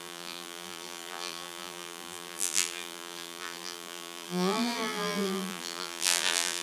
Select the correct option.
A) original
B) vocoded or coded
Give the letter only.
B